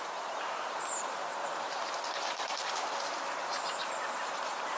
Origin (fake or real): real